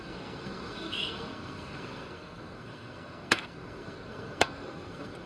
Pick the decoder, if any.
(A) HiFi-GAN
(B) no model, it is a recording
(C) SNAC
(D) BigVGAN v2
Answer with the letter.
C